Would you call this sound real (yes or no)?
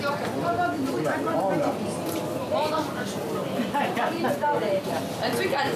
yes